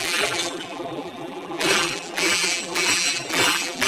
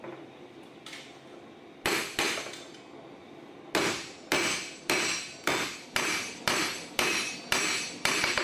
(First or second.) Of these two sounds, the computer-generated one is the first